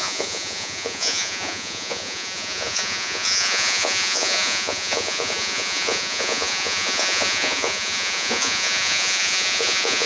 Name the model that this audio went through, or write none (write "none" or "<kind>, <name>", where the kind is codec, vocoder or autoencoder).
vocoder, Vocos